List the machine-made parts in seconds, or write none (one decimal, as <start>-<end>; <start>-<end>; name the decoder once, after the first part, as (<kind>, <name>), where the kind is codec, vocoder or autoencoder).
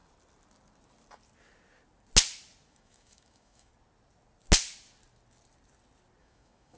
2.7-3.7 (autoencoder, DAC-VAE); 6.2-6.8